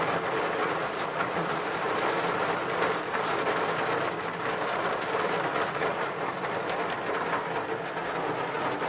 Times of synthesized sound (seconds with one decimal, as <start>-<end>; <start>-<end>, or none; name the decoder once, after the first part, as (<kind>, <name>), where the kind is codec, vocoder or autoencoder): 0.6-1.6 (vocoder, Vocos); 5.5-6.2